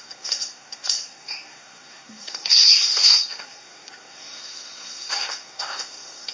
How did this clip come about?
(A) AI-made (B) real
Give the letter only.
A